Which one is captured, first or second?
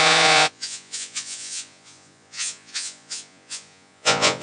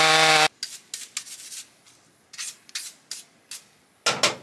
second